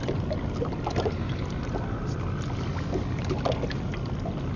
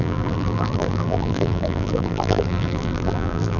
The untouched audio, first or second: first